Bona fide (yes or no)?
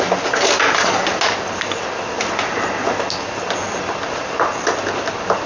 yes